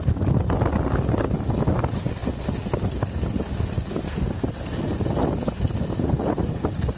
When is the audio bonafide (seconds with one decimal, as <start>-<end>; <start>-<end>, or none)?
0.0-7.0

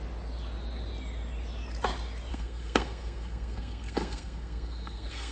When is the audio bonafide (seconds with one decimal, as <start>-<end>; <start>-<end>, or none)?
0.0-2.3

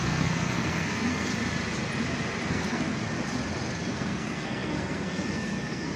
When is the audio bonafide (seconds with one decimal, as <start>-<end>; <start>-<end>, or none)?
1.3-2.5; 2.9-3.9

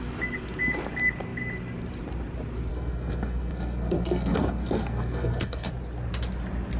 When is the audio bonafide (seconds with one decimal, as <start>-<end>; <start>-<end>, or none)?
0.0-2.7; 5.7-6.8

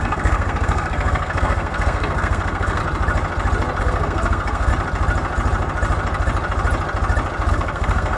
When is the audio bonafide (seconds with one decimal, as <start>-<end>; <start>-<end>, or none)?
2.8-3.8; 4.7-7.5